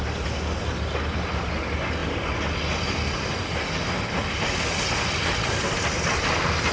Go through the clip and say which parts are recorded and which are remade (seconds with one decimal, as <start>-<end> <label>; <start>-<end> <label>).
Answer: 0.0-6.7 recorded